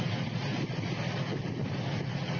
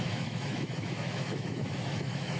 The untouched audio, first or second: first